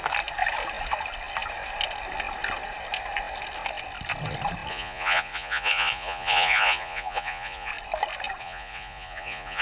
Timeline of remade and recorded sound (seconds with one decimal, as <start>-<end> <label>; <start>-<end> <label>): 0.0-4.7 recorded; 4.7-7.7 remade; 7.7-8.4 recorded; 8.4-9.6 remade